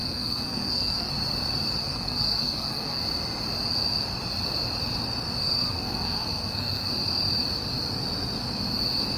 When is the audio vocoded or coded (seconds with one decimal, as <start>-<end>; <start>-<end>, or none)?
0.0-1.1; 1.8-3.0; 5.4-6.9